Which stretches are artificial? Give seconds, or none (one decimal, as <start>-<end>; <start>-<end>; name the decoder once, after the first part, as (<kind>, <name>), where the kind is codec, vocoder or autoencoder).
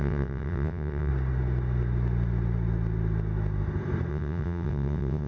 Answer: 0.0-1.1 (vocoder, WaveNeXt); 4.1-5.3